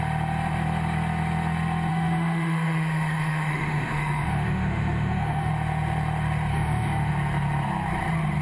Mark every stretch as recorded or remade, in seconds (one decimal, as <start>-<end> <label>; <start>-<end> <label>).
0.0-1.9 recorded; 1.9-5.5 remade; 5.5-6.5 recorded; 6.5-7.1 remade; 7.1-8.4 recorded